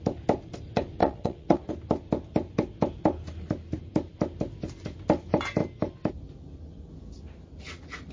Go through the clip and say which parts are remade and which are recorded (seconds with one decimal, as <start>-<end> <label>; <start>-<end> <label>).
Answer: 0.0-1.0 recorded; 1.0-1.7 remade; 1.7-8.1 recorded